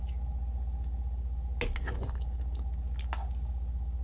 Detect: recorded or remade recorded